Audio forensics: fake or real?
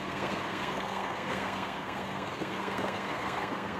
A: fake